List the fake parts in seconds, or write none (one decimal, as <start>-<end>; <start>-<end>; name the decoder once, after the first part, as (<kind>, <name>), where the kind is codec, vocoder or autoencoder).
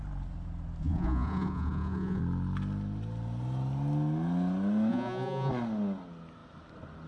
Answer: 0.8-2.2 (vocoder, Vocos); 4.9-5.5